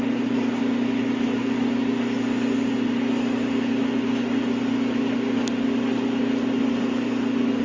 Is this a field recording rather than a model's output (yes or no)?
yes